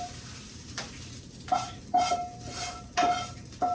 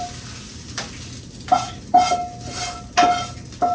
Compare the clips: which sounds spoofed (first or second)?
first